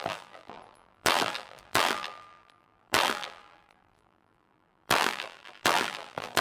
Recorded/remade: remade